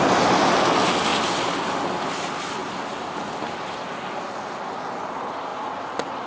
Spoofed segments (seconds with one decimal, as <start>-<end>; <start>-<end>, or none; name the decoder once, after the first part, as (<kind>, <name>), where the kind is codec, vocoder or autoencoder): none

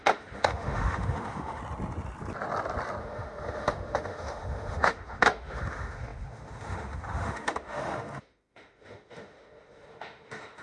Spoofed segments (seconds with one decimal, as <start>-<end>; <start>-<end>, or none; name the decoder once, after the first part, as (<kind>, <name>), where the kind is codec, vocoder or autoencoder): 0.0-1.6 (autoencoder, DAC-VAE); 3.0-10.6

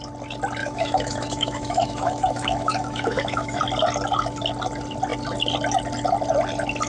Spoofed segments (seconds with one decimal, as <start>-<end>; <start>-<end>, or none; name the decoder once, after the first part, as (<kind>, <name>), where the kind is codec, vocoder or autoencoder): 0.6-3.6 (autoencoder, DAC-VAE)

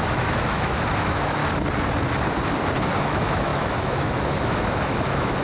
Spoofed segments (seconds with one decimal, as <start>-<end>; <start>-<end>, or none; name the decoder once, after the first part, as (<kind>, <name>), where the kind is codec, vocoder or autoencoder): 0.0-1.4 (autoencoder, DAC-VAE); 3.0-5.4

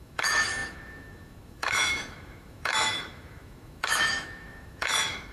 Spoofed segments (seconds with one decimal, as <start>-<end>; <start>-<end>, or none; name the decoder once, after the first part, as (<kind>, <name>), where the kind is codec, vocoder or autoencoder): 0.0-5.3 (autoencoder, DAC-VAE)